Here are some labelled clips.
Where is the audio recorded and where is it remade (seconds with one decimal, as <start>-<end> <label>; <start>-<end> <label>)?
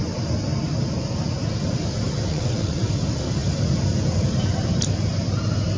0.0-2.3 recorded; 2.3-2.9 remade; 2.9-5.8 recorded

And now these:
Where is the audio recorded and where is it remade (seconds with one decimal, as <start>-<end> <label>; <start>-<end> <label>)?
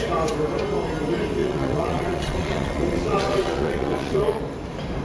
0.0-1.4 recorded; 1.4-4.4 remade; 4.4-5.0 recorded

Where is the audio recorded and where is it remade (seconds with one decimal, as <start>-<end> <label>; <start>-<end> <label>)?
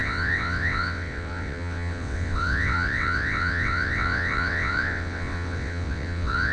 0.0-6.5 remade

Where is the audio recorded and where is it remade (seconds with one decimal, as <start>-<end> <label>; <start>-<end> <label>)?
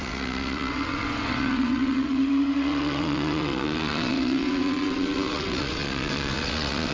0.0-6.9 remade